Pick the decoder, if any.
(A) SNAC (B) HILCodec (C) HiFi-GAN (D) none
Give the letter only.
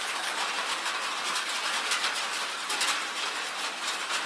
D